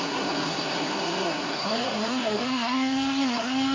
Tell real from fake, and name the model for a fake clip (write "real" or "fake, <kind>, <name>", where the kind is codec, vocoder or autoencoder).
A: fake, codec, SNAC